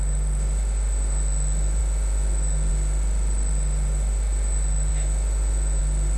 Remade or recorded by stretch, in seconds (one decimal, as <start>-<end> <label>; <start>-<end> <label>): 0.0-6.2 remade